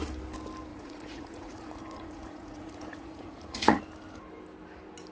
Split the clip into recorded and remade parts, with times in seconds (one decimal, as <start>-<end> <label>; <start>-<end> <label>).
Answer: 0.0-0.7 recorded; 0.7-3.8 remade; 3.8-5.1 recorded